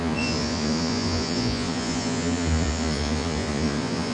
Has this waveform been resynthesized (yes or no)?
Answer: yes